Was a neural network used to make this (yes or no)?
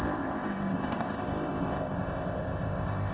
yes